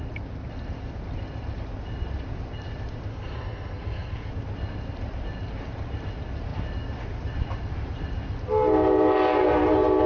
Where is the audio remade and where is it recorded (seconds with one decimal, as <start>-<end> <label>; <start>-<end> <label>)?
0.0-3.1 recorded; 3.1-4.3 remade; 4.3-10.1 recorded